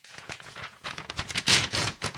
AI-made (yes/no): yes